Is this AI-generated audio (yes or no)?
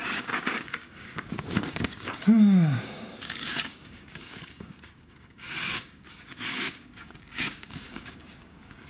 yes